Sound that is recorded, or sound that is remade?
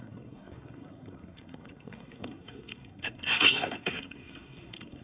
remade